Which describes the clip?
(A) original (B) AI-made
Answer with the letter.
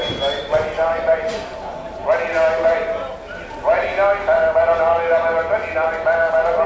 A